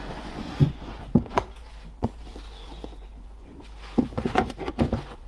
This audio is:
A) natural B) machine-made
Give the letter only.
B